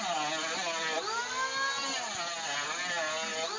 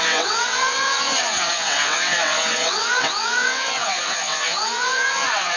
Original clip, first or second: first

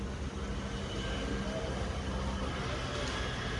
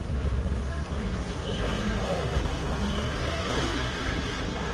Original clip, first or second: first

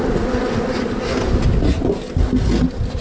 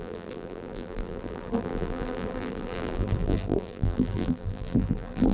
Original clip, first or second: first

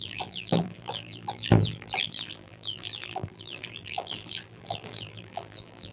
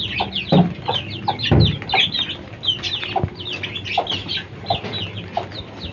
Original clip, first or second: second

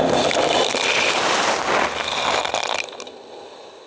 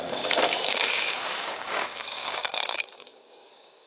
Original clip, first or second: first